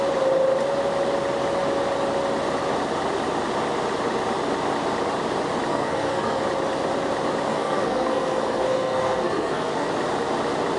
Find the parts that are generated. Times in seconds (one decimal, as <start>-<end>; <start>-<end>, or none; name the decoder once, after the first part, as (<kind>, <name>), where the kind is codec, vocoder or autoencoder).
5.7-6.4 (codec, SNAC); 7.5-9.9